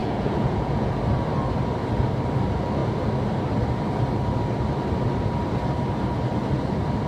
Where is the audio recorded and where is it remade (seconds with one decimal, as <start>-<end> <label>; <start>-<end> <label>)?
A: 0.0-1.0 remade; 1.0-7.1 recorded